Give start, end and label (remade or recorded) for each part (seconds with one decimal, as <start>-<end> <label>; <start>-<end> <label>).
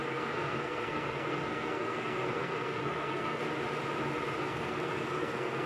0.0-3.4 remade; 3.4-4.4 recorded; 4.4-5.7 remade